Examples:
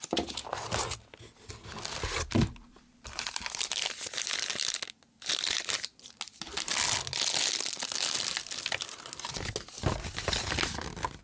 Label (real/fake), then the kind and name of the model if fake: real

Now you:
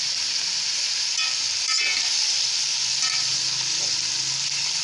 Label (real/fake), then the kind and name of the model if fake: real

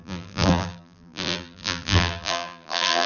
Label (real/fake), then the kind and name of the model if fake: fake, vocoder, BigVGAN v2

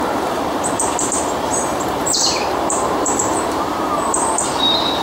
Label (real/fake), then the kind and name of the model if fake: fake, vocoder, BigVGAN v2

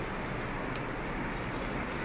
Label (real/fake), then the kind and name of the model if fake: real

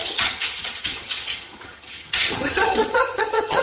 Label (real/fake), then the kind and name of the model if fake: fake, vocoder, HiFi-GAN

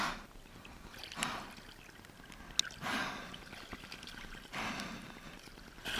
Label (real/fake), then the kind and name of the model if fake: real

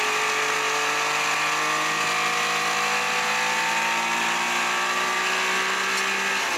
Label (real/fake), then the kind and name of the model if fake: real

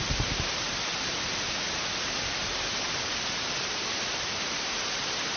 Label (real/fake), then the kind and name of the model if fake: real